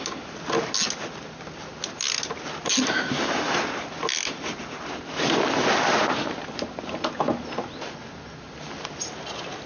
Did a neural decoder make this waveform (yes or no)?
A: no